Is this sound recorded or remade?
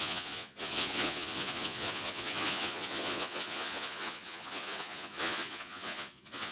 remade